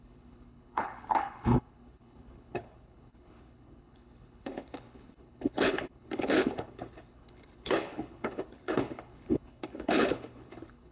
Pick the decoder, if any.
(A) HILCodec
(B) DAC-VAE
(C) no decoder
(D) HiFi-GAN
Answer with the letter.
A